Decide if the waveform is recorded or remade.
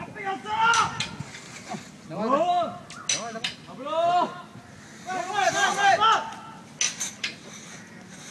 recorded